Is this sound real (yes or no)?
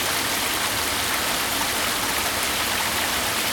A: yes